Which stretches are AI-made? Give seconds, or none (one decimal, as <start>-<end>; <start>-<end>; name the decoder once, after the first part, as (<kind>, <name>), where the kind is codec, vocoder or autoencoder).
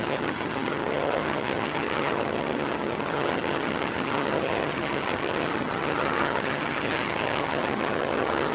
0.0-8.5 (vocoder, HiFi-GAN)